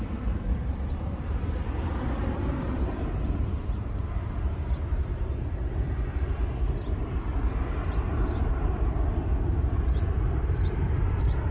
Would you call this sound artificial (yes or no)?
yes